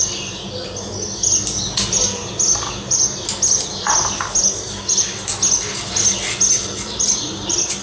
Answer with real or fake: real